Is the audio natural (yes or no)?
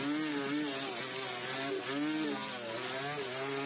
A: yes